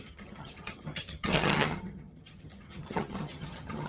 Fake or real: fake